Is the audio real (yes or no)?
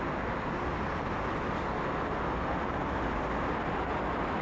yes